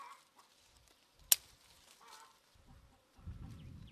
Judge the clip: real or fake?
real